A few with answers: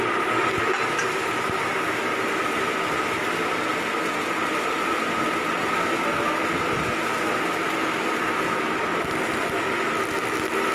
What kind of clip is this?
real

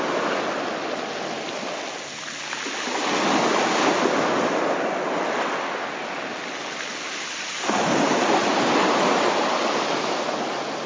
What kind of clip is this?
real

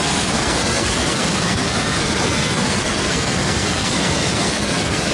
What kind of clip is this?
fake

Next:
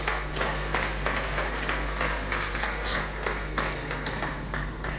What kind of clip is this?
fake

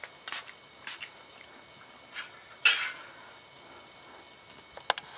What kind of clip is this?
real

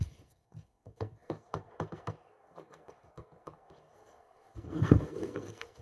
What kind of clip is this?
fake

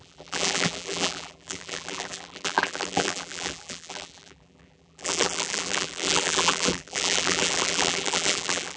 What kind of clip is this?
fake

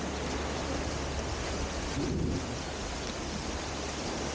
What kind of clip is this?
real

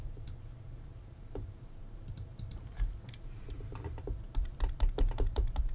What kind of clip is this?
fake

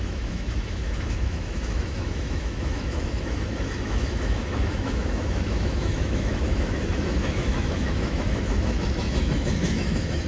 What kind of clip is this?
fake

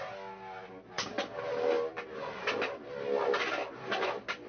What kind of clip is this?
real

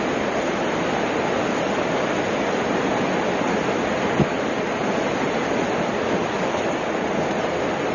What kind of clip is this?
real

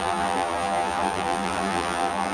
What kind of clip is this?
fake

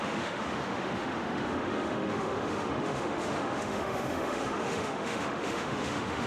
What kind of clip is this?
fake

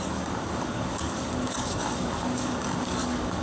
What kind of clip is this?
fake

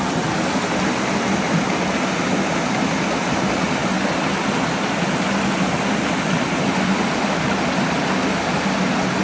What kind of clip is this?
real